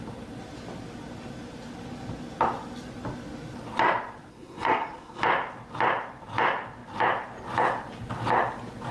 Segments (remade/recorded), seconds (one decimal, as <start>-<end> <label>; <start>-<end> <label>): 0.0-4.3 recorded; 4.3-5.2 remade; 5.2-8.9 recorded